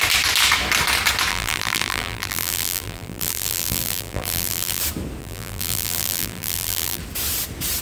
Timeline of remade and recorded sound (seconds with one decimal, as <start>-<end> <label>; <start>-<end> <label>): 0.0-1.3 recorded; 1.3-4.8 remade; 4.8-5.2 recorded; 5.2-7.0 remade; 7.0-7.8 recorded